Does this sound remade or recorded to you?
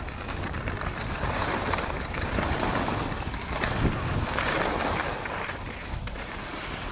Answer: recorded